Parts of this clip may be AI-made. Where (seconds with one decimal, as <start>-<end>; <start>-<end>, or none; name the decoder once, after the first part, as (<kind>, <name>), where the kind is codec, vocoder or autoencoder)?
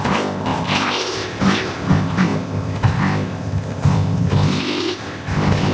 0.0-5.7 (codec, ZipCodec)